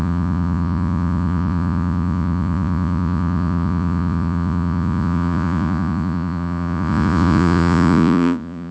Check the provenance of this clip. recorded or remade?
remade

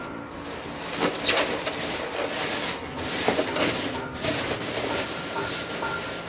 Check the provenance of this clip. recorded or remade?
recorded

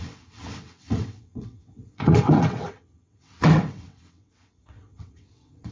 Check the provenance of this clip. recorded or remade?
remade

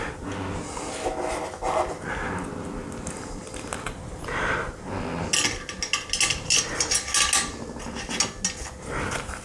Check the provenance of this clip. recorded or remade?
recorded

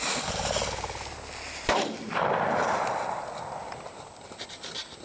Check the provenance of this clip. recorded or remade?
recorded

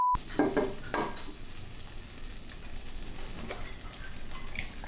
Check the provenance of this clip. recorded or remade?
recorded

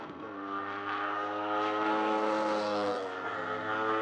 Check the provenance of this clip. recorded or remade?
remade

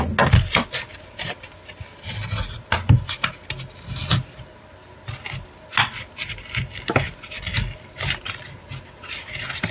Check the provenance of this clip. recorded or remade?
recorded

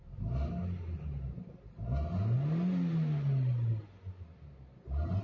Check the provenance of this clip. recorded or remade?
recorded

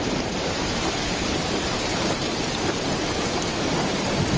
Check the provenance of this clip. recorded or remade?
remade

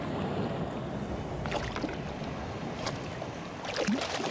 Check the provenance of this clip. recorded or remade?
recorded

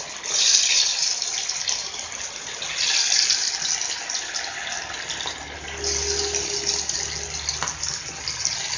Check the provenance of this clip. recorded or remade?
recorded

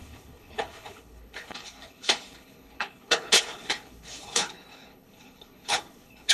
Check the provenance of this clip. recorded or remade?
remade